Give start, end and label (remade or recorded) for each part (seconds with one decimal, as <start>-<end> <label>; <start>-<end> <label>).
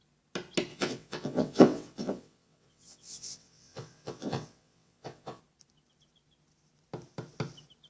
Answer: 0.0-0.7 recorded; 0.7-5.4 remade; 5.4-7.9 recorded